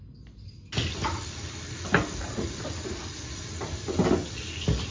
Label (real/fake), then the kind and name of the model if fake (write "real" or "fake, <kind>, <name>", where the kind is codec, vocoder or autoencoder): real